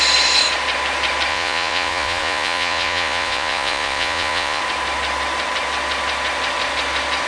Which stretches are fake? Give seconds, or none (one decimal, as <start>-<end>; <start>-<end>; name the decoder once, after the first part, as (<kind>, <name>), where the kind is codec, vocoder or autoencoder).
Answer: 1.3-4.6 (vocoder, Vocos)